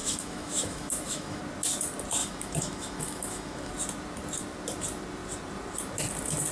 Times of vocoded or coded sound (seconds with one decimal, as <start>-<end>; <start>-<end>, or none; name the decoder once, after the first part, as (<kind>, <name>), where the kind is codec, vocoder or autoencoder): 0.0-1.4 (autoencoder, DAC-VAE); 2.2-3.7

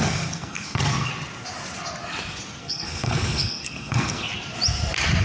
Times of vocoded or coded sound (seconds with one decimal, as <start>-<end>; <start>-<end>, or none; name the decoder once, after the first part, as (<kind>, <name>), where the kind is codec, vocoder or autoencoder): 0.0-1.1 (codec, SNAC); 2.6-4.3

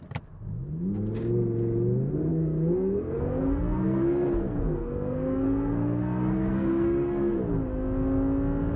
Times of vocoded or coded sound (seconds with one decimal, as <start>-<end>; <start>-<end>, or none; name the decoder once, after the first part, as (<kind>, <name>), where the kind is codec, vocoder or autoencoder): 2.3-7.4 (codec, SNAC)

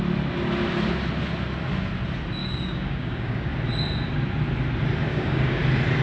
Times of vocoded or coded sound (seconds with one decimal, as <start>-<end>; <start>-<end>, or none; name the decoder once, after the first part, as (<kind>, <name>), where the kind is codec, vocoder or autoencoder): 2.4-3.5 (codec, DAC); 5.1-5.6

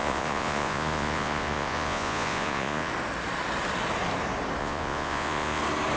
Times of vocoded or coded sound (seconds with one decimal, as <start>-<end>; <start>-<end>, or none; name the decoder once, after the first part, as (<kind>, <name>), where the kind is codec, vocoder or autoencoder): 0.0-2.9 (vocoder, Vocos); 4.6-5.6

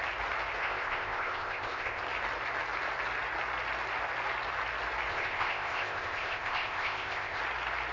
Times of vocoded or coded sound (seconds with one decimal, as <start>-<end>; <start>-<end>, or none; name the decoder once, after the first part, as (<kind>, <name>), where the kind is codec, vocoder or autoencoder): 0.6-2.0 (codec, ZipCodec); 5.1-7.4